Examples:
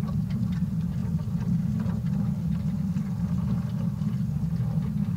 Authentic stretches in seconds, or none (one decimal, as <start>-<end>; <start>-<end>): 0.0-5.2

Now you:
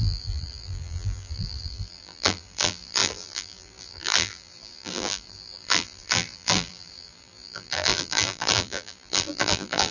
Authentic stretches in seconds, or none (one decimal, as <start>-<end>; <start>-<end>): none

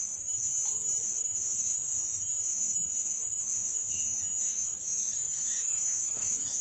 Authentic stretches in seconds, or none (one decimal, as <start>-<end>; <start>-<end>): 0.5-1.0